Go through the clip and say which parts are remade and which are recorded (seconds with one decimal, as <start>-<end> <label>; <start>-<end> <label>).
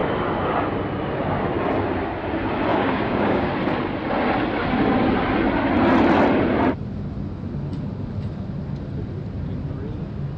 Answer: 0.0-2.7 recorded; 2.7-3.5 remade; 3.5-10.4 recorded